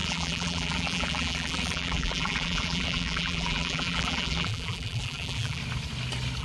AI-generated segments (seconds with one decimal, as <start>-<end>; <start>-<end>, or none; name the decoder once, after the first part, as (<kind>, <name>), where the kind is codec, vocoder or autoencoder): 0.0-5.6 (vocoder, BigVGAN v2)